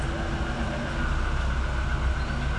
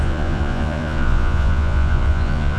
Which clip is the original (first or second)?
first